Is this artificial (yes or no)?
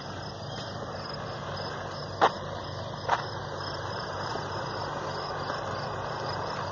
no